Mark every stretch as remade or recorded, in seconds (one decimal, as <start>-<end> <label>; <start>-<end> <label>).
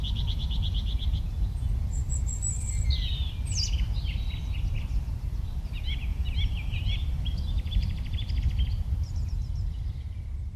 0.0-6.1 recorded; 6.1-8.4 remade; 8.4-10.6 recorded